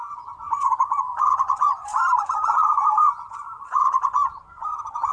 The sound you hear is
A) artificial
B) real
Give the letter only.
A